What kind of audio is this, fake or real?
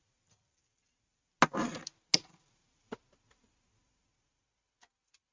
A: real